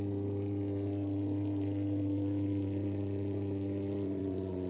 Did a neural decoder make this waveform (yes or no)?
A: no